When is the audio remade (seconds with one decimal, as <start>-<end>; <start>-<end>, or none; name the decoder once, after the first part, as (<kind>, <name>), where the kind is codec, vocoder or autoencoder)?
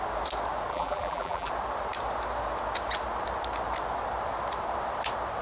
0.7-1.5 (vocoder, BigVGAN v2)